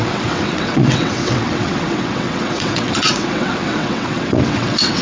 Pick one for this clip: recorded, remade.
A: remade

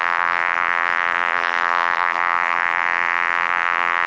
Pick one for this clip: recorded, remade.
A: remade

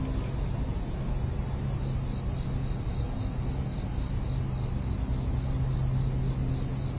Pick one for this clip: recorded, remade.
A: recorded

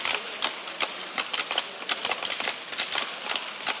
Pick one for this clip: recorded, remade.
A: recorded